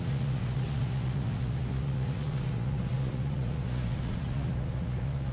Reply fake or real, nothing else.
fake